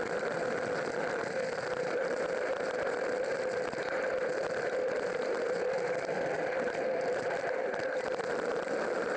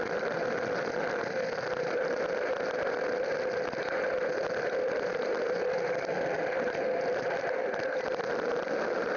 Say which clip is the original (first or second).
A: second